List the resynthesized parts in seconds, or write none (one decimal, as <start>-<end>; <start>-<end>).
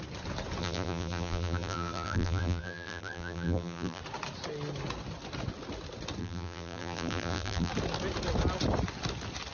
0.6-4.0; 6.2-7.7